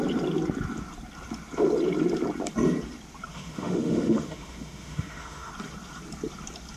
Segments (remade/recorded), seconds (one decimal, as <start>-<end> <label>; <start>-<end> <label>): 0.0-3.3 recorded; 3.3-5.5 remade; 5.5-6.8 recorded